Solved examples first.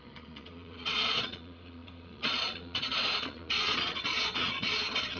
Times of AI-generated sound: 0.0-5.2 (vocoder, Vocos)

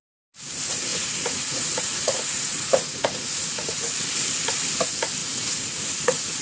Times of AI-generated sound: 0.9-3.9 (vocoder, Vocos); 5.2-6.4

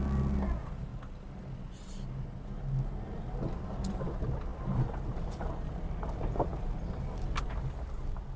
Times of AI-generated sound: none